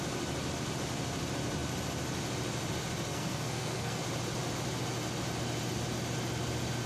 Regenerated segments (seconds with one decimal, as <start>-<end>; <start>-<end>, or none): 3.1-4.0